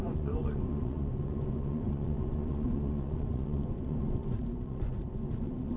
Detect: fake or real fake